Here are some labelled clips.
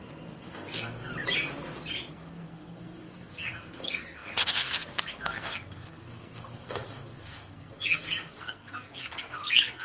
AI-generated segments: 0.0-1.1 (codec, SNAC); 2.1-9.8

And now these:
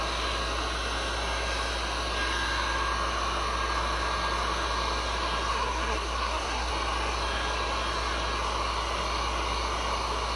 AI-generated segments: 5.5-6.7 (codec, SNAC)

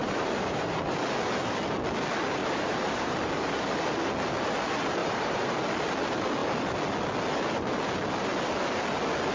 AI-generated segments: 0.0-1.0 (vocoder, BigVGAN v2); 2.4-3.3; 5.0-5.6

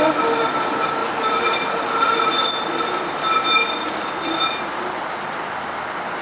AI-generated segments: none

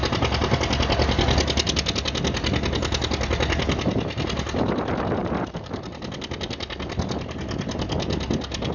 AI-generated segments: 5.2-5.9 (vocoder, BigVGAN v2)

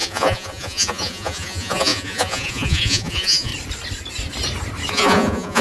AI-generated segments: 0.0-3.5 (vocoder, Vocos); 4.9-5.6

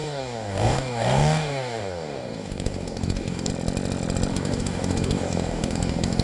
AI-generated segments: 0.0-3.5 (codec, DAC); 4.3-6.2